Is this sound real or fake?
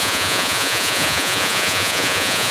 fake